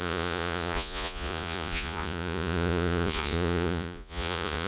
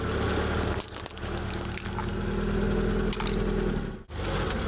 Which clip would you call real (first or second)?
second